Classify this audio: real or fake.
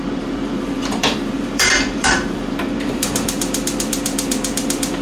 fake